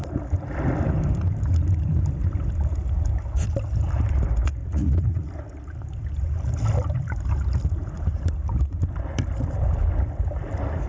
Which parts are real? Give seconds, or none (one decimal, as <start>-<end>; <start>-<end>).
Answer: 0.0-4.6; 5.3-10.9